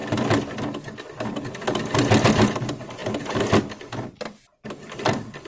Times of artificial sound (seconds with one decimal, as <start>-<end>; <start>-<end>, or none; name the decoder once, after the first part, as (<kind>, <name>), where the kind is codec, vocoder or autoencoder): none